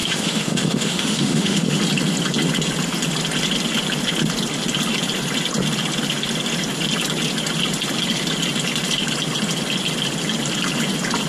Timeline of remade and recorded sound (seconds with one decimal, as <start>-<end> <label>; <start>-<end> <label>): 0.0-1.8 remade; 1.8-11.3 recorded